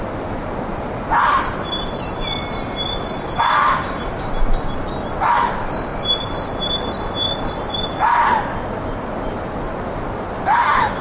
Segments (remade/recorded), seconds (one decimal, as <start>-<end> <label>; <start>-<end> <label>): 0.0-11.0 recorded